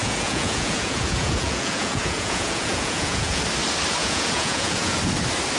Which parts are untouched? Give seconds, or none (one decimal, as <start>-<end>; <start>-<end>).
3.4-4.0; 5.0-5.6